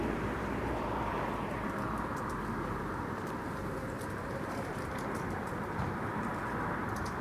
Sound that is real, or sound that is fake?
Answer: fake